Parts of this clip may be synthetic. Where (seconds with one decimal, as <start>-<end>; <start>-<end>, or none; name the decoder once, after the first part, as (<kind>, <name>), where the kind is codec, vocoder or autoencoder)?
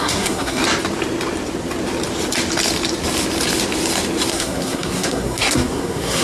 0.0-0.6 (codec, SNAC); 4.3-6.2